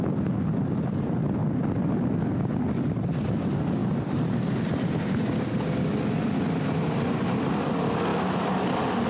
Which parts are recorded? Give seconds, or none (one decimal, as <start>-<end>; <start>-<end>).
0.0-1.4; 2.0-8.1